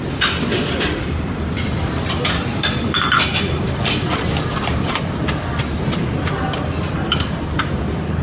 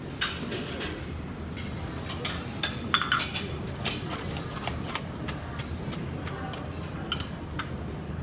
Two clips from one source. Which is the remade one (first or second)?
first